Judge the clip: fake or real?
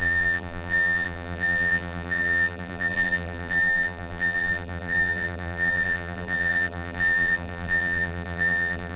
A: fake